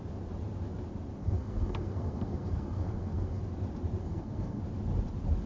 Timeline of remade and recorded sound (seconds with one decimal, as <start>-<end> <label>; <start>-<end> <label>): 0.0-1.2 recorded; 1.2-3.4 remade; 3.4-4.0 recorded; 4.0-4.6 remade; 4.6-5.5 recorded